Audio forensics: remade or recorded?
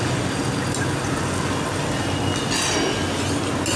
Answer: recorded